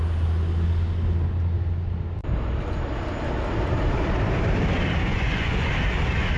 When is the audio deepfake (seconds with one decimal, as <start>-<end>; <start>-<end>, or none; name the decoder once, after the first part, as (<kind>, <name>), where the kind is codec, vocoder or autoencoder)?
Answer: 5.1-5.7 (vocoder, Vocos)